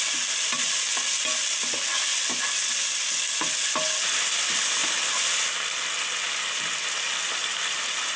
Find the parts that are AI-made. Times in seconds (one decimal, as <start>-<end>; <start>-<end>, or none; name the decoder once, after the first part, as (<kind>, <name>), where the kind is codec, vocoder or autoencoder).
none